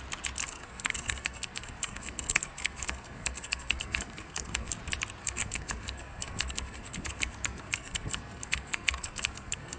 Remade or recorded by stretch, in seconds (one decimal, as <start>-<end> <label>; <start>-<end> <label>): 0.0-0.4 recorded; 0.4-4.7 remade; 4.7-5.2 recorded; 5.2-9.8 remade

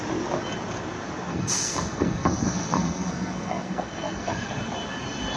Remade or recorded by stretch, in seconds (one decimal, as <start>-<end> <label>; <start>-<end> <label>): 0.0-1.3 recorded; 1.3-4.5 remade; 4.5-5.4 recorded

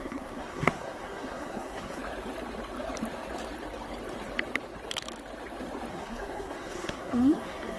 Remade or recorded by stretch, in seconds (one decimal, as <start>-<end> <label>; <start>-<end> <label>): 0.0-2.0 remade; 2.0-5.9 recorded; 5.9-7.8 remade

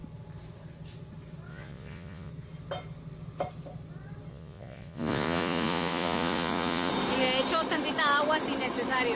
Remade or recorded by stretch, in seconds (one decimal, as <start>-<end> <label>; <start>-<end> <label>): 0.0-1.5 recorded; 1.5-2.3 remade; 2.3-4.3 recorded; 4.3-6.9 remade; 6.9-9.2 recorded

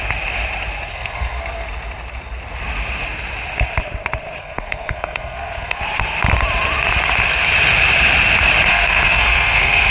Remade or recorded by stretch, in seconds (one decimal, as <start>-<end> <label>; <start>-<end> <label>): 0.0-0.9 recorded; 0.9-1.4 remade; 1.4-4.4 recorded; 4.4-5.8 remade; 5.8-8.7 recorded; 8.7-9.9 remade